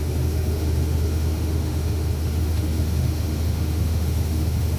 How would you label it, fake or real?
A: fake